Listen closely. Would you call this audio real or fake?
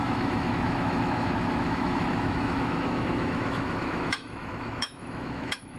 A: fake